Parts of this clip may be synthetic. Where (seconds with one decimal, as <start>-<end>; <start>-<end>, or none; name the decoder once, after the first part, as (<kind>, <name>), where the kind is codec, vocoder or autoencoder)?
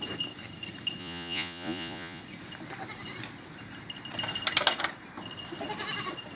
1.0-2.2 (vocoder, Vocos)